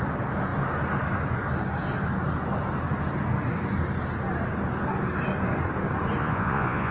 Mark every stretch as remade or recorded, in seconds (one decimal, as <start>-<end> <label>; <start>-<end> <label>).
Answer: 0.0-6.2 recorded; 6.2-6.9 remade